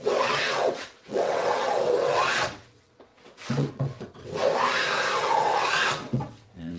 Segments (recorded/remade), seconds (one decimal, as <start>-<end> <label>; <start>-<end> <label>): 0.0-4.4 remade; 4.4-5.2 recorded; 5.2-6.8 remade